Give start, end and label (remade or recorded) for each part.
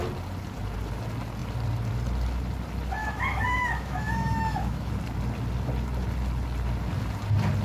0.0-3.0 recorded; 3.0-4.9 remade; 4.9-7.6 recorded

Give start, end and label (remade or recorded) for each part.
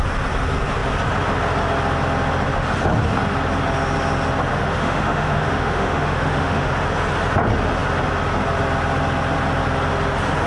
0.0-4.5 recorded; 4.5-6.7 remade; 6.7-10.5 recorded